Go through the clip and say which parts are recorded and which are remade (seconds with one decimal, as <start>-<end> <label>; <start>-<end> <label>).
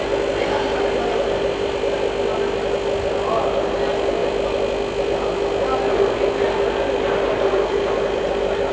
0.0-8.7 recorded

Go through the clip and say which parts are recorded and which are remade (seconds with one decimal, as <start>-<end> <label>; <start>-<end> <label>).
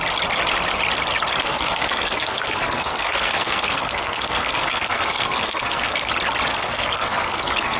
0.0-1.4 recorded; 1.4-6.1 remade; 6.1-6.5 recorded; 6.5-7.8 remade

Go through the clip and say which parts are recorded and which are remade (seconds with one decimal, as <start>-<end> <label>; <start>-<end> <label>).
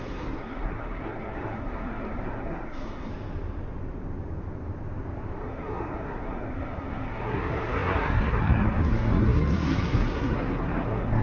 0.0-3.1 remade; 3.1-5.4 recorded; 5.4-11.2 remade